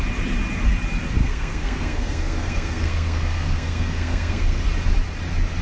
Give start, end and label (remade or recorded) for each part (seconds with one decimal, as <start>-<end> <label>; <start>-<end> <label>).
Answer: 0.0-1.2 recorded; 1.2-4.6 remade; 4.6-5.6 recorded